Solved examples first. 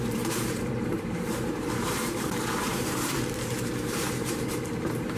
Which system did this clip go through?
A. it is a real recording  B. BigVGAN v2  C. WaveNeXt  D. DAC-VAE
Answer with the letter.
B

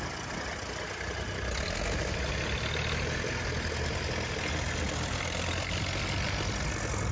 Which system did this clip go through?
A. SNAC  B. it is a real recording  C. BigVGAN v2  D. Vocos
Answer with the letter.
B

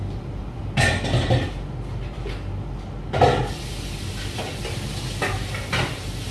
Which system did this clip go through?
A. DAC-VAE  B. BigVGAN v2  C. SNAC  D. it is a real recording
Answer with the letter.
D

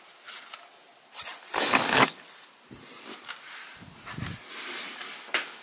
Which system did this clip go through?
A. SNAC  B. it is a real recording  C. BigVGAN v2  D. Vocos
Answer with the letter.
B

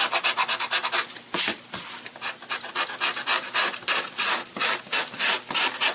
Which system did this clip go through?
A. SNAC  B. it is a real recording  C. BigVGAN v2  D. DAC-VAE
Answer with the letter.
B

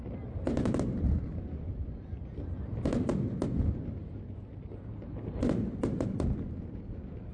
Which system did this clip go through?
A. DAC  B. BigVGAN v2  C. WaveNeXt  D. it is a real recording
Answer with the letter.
D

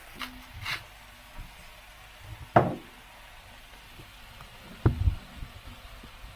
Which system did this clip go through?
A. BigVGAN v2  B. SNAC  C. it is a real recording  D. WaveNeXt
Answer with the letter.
C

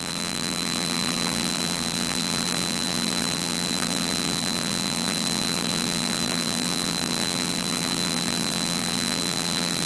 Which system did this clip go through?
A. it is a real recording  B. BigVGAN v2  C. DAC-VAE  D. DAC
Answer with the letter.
B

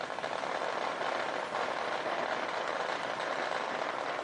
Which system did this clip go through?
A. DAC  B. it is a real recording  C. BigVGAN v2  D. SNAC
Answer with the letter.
C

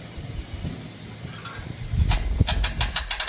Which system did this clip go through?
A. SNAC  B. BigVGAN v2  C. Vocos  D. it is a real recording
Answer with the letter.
D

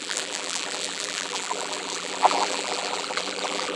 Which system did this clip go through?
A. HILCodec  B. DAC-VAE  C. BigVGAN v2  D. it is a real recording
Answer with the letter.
C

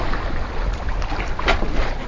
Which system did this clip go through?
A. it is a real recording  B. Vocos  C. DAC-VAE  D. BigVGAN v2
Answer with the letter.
A